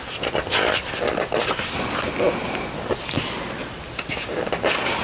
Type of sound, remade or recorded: recorded